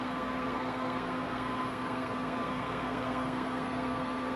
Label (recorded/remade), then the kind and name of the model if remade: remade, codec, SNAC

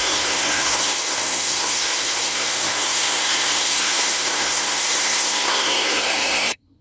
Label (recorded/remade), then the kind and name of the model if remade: remade, codec, SNAC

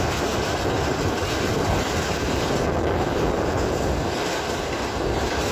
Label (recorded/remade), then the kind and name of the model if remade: recorded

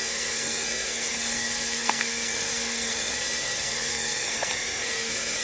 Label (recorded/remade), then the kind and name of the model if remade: remade, codec, SNAC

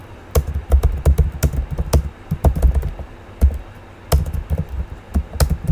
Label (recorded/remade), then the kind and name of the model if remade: recorded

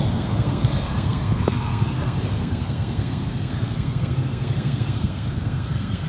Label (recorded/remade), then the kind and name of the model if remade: remade, codec, SNAC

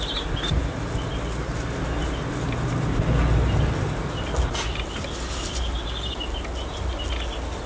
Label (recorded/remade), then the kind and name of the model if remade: recorded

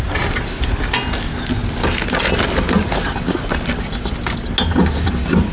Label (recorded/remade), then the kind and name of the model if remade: recorded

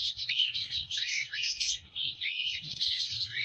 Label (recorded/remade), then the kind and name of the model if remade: remade, codec, SNAC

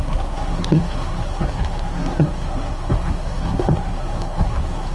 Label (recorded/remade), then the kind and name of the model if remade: remade, codec, SNAC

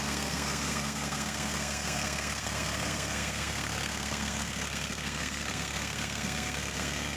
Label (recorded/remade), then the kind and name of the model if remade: remade, codec, SNAC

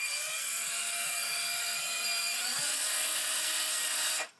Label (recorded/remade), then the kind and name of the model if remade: remade, codec, SNAC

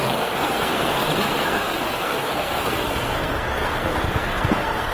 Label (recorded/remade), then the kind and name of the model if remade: remade, codec, SNAC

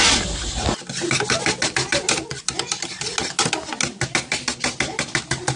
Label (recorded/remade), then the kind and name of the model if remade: recorded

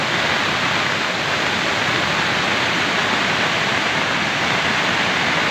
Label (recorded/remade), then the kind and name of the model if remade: recorded